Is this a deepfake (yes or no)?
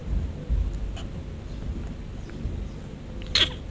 no